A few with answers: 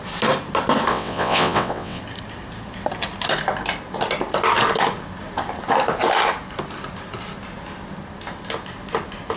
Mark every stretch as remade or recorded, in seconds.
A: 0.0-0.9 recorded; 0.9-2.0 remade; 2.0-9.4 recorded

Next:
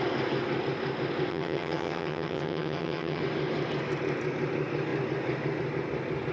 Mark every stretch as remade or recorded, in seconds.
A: 0.0-1.3 recorded; 1.3-3.2 remade; 3.2-6.3 recorded

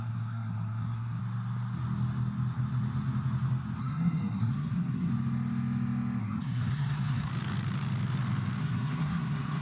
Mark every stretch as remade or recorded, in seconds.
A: 0.0-1.2 remade; 1.2-3.8 recorded; 3.8-5.1 remade; 5.1-6.2 recorded; 6.2-7.3 remade; 7.3-8.6 recorded; 8.6-9.6 remade